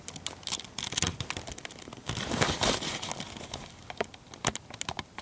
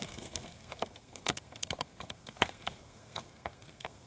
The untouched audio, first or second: first